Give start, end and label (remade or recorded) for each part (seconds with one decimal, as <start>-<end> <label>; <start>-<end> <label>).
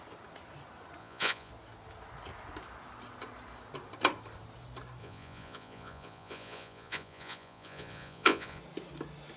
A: 0.0-1.0 recorded; 1.0-1.5 remade; 1.5-5.0 recorded; 5.0-8.6 remade; 8.6-9.4 recorded